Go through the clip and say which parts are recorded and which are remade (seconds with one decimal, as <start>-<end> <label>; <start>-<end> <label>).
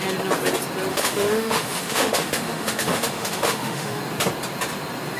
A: 0.0-0.9 recorded; 0.9-4.0 remade; 4.0-5.2 recorded